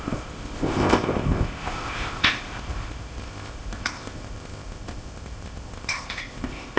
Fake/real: fake